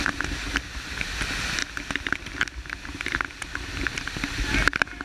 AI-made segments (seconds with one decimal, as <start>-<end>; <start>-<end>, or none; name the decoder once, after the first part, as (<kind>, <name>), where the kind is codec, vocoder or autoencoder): none